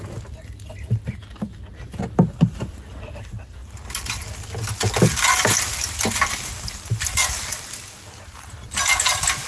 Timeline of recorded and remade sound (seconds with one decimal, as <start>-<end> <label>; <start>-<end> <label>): 0.0-9.5 recorded